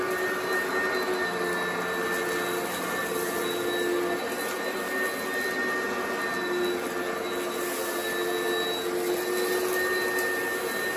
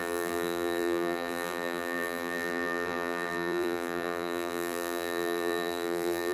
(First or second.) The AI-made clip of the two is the second